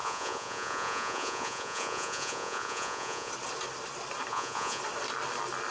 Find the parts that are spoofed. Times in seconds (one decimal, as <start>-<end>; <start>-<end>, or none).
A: 0.0-3.3; 4.3-4.8